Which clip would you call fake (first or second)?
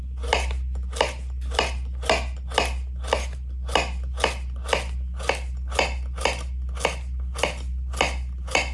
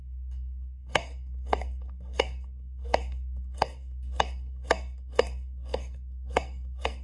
second